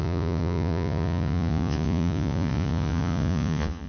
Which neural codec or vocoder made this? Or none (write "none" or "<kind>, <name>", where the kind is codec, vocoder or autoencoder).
vocoder, Vocos